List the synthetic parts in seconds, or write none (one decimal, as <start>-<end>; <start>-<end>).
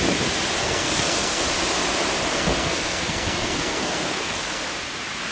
0.6-1.4; 2.3-4.6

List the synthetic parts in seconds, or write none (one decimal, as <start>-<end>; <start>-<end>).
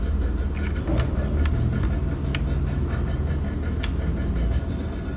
none